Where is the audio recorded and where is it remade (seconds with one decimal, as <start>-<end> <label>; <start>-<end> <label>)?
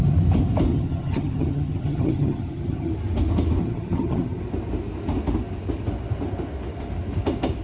0.0-0.7 recorded; 0.7-2.9 remade; 2.9-3.6 recorded; 3.6-4.4 remade; 4.4-7.6 recorded